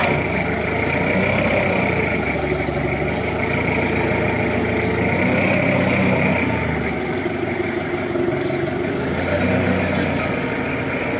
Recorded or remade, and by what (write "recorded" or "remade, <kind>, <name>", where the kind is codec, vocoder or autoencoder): recorded